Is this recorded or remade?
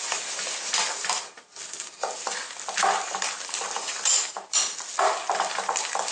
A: recorded